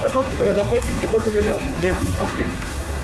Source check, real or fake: fake